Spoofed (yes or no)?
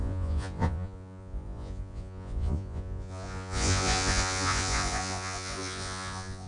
yes